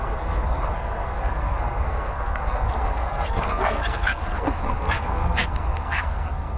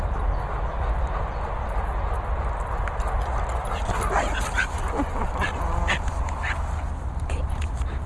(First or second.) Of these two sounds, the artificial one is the first